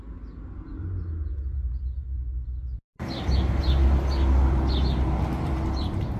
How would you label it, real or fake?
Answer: real